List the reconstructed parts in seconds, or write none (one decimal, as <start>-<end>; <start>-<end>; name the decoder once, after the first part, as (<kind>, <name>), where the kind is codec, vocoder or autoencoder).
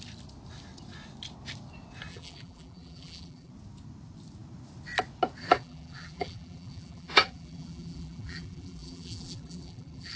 2.1-3.5 (vocoder, BigVGAN v2); 5.4-10.2